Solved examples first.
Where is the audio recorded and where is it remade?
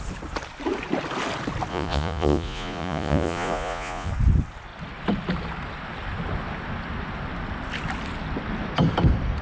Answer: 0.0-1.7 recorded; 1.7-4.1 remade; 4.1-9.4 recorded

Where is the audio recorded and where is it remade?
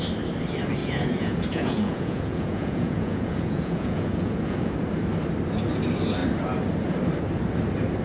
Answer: 0.0-0.8 recorded; 0.8-4.7 remade; 4.7-8.0 recorded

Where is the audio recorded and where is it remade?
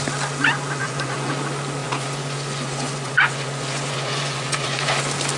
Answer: 0.0-0.8 recorded; 0.8-1.3 remade; 1.3-1.8 recorded; 1.8-5.0 remade; 5.0-5.4 recorded